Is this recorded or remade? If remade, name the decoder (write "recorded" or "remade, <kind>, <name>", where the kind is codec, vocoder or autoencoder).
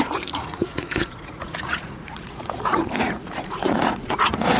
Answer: remade, vocoder, Vocos